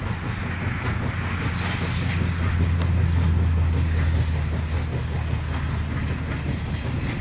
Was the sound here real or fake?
real